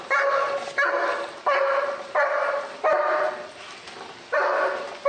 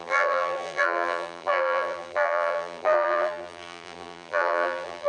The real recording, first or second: first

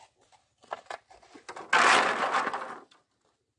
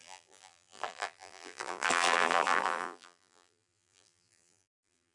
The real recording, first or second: first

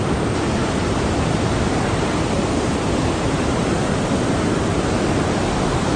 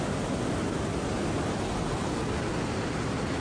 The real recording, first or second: second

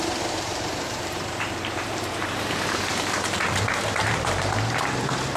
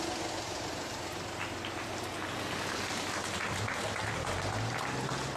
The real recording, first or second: second